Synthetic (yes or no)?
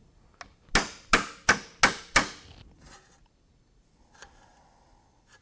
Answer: no